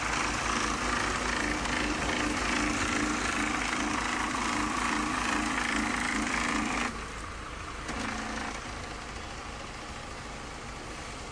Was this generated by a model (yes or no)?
no